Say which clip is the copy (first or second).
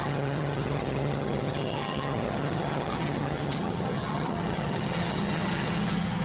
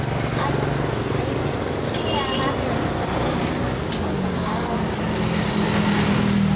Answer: first